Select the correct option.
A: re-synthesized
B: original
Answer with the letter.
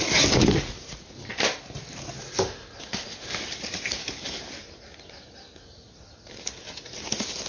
B